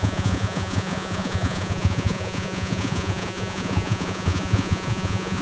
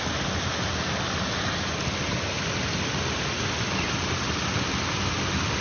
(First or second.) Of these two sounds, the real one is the second